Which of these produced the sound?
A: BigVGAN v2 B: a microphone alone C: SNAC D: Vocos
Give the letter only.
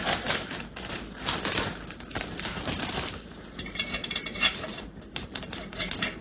A